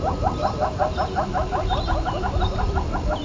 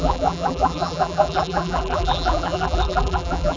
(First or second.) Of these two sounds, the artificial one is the second